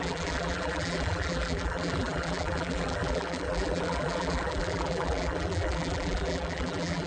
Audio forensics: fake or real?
fake